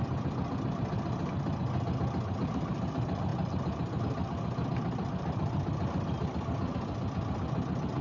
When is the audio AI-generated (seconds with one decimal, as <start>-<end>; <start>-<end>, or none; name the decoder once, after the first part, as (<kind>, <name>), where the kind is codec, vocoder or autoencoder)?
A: none